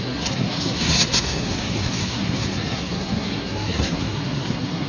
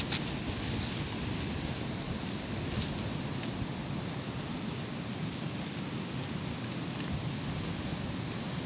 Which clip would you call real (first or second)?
second